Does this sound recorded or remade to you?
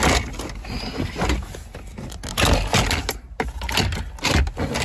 recorded